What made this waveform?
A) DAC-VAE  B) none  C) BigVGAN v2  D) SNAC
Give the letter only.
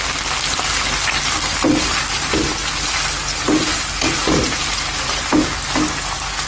B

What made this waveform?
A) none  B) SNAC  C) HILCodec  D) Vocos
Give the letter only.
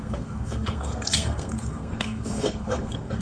B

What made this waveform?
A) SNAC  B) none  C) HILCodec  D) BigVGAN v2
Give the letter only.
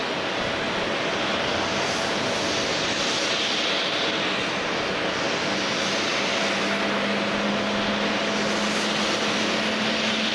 B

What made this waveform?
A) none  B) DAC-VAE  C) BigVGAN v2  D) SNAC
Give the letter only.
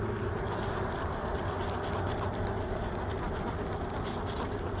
A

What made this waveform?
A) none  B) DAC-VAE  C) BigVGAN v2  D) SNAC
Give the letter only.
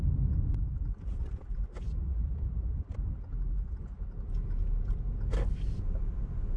A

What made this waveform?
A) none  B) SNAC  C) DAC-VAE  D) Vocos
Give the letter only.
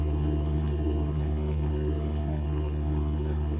B